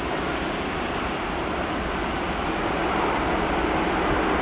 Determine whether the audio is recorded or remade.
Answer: recorded